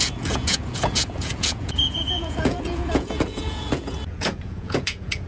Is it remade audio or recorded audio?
remade